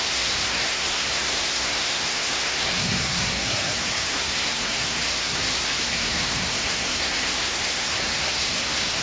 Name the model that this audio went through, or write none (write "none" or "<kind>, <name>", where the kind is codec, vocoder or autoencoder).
codec, SNAC